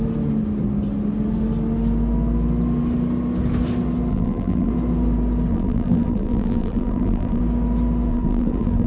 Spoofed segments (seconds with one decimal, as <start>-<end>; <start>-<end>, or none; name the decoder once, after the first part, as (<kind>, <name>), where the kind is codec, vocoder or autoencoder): 4.1-4.7 (vocoder, BigVGAN v2); 5.5-7.4; 8.1-8.9